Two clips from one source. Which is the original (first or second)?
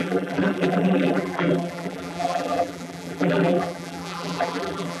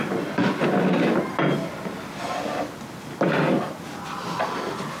second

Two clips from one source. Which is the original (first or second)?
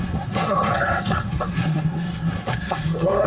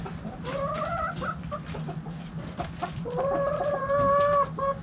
second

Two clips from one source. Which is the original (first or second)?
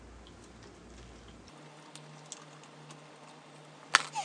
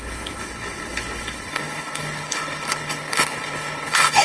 first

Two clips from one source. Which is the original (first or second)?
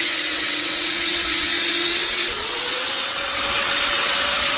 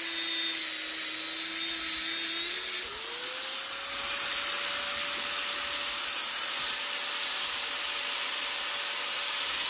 second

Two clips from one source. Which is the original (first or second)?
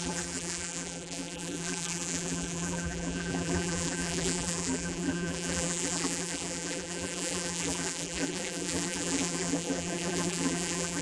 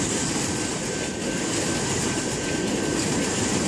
second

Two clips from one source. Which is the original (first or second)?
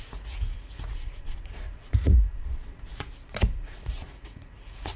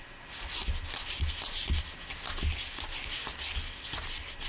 second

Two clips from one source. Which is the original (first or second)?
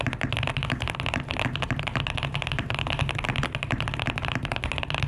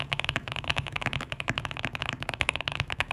first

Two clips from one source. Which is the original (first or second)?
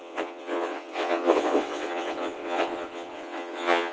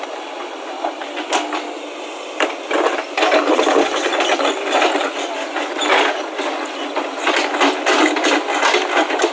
second